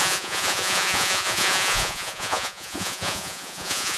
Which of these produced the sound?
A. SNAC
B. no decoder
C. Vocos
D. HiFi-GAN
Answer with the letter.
C